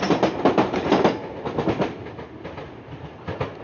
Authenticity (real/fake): real